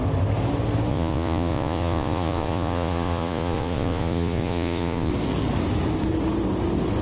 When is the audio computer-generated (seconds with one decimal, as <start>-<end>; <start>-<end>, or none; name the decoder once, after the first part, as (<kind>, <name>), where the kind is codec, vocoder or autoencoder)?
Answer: 0.9-5.1 (vocoder, Vocos)